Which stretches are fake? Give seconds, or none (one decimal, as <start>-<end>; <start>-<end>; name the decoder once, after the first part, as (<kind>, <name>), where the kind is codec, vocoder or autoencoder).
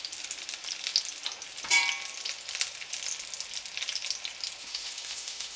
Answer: 4.6-5.6 (autoencoder, DAC-VAE)